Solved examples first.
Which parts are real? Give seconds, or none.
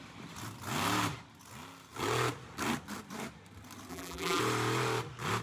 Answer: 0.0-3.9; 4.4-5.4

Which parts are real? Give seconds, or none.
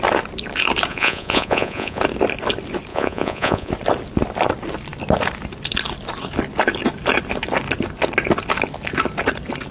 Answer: 0.0-0.9; 2.0-2.9; 3.7-9.7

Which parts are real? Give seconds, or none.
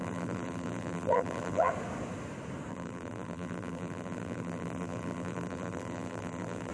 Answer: 1.7-2.7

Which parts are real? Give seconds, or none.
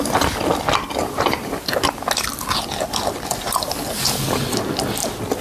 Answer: 0.0-1.0; 1.9-5.4